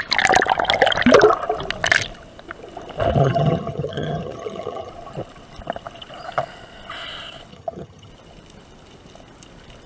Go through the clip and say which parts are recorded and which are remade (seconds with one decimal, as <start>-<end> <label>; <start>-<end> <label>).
0.0-3.2 recorded; 3.2-4.9 remade; 4.9-7.5 recorded; 7.5-8.1 remade; 8.1-9.9 recorded

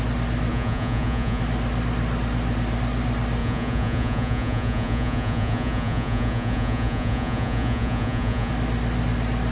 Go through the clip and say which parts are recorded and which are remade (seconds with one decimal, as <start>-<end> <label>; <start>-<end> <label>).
0.0-0.5 recorded; 0.5-1.4 remade; 1.4-3.4 recorded; 3.4-8.5 remade; 8.5-9.5 recorded

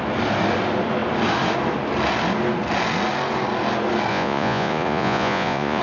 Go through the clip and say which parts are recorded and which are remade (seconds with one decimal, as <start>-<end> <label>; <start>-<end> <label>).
0.0-4.1 recorded; 4.1-5.8 remade

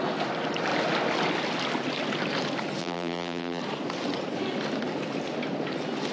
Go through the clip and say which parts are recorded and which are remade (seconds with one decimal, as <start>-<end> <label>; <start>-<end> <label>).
0.0-2.8 recorded; 2.8-3.6 remade; 3.6-6.1 recorded